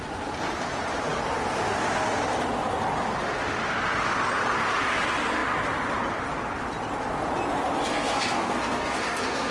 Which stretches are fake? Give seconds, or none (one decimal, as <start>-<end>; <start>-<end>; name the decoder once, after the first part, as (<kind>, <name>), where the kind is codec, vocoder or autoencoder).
7.9-9.5 (codec, SNAC)